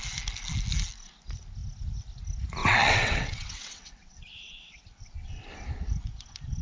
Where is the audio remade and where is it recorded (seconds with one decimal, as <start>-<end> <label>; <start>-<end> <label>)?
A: 0.0-2.6 recorded; 2.6-5.5 remade; 5.5-6.6 recorded